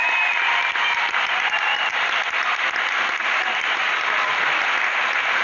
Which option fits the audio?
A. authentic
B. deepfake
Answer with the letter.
A